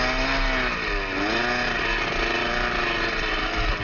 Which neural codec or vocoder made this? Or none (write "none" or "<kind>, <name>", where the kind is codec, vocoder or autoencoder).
none